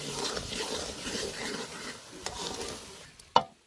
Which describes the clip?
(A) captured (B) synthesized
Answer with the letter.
A